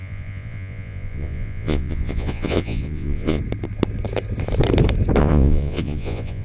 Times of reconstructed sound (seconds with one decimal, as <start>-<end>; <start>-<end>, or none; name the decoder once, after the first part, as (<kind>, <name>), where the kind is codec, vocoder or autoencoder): 0.0-3.4 (vocoder, Vocos); 5.2-6.4